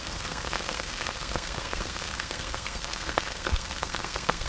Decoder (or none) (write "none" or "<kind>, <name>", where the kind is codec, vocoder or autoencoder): codec, SNAC